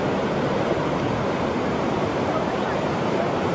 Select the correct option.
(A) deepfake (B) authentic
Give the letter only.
A